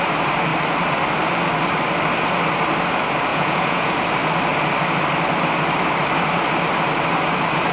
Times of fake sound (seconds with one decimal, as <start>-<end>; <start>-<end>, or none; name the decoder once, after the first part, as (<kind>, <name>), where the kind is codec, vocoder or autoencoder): 3.3-3.9 (vocoder, Vocos)